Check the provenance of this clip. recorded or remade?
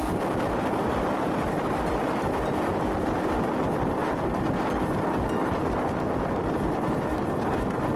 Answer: recorded